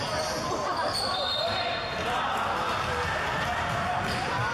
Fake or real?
real